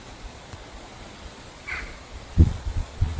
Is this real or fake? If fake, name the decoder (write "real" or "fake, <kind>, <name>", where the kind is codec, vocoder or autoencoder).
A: fake, vocoder, Vocos